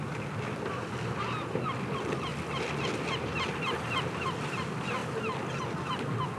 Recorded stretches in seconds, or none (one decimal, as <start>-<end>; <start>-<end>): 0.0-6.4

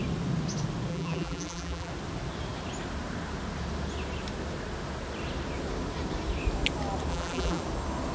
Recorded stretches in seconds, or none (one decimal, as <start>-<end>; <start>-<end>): 0.0-0.9; 1.9-7.1; 7.6-8.1

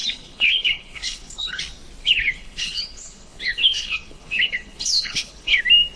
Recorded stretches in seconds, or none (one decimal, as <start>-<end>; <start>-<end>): 1.6-2.0; 5.6-6.0

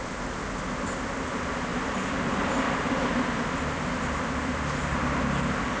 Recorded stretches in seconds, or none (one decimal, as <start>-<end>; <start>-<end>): 0.0-1.7; 5.2-5.8

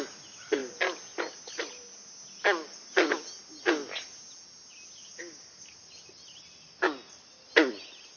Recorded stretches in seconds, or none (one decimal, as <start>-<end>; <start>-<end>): 0.0-8.2

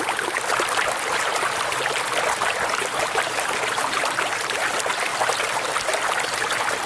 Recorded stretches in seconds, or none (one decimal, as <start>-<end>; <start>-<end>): 0.0-6.9

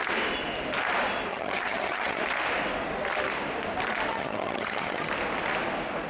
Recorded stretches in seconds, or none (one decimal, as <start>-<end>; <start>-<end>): 0.0-1.3; 2.2-4.1; 5.1-6.1